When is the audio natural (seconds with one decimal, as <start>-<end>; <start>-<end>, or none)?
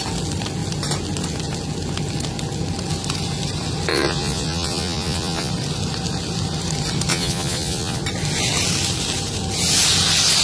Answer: 0.0-3.9; 5.5-7.1; 8.0-10.4